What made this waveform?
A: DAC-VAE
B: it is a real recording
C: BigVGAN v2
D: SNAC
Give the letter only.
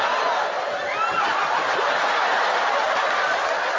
B